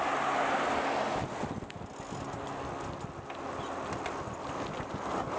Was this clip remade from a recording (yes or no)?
no